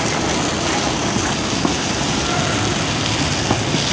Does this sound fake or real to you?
real